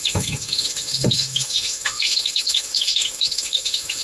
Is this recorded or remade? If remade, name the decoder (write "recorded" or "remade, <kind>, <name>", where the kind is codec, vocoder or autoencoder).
remade, autoencoder, DAC-VAE